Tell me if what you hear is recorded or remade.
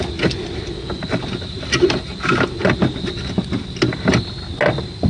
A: recorded